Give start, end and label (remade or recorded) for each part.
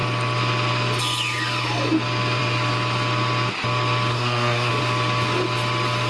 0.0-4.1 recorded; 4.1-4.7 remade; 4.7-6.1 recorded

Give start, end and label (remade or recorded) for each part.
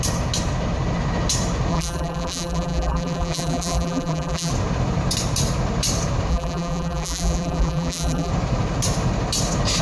0.0-1.7 recorded; 1.7-4.5 remade; 4.5-6.3 recorded; 6.3-8.3 remade; 8.3-9.8 recorded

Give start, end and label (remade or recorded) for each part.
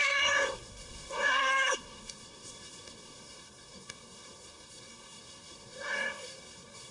0.0-6.9 remade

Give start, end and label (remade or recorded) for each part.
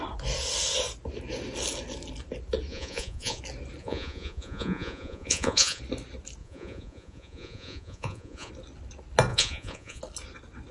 0.0-2.7 recorded; 2.7-3.4 remade; 3.4-3.8 recorded; 3.8-5.8 remade; 5.8-6.4 recorded; 6.4-8.5 remade; 8.5-9.3 recorded; 9.3-10.0 remade; 10.0-10.7 recorded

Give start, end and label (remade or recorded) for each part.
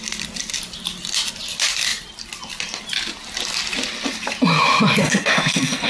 0.0-5.0 recorded; 5.0-5.9 remade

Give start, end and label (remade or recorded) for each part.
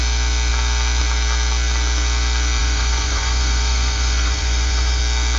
0.0-2.6 recorded; 2.6-5.0 remade; 5.0-5.4 recorded